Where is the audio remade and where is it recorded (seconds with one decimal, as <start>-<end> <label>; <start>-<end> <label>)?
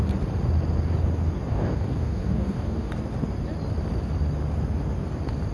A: 0.0-1.5 recorded; 1.5-2.9 remade; 2.9-5.5 recorded